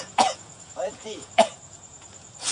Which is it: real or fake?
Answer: fake